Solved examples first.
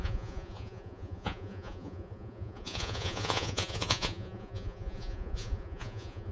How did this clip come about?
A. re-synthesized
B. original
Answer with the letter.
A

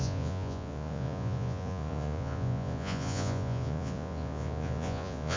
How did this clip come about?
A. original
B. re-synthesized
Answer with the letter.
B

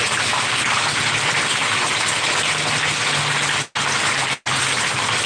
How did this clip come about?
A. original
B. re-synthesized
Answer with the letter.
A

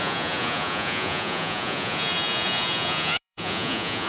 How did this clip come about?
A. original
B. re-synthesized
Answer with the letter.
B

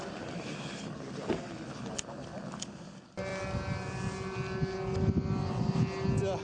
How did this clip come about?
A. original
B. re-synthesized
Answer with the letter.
A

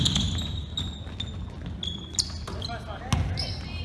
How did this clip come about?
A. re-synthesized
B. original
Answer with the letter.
B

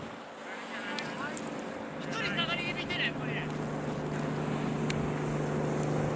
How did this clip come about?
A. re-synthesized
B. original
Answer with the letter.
B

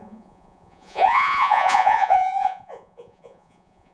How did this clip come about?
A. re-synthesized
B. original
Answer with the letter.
A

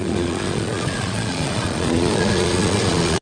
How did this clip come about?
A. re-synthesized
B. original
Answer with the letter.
A